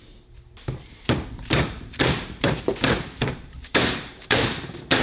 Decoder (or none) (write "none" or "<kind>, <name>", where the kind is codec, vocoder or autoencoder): vocoder, BigVGAN v2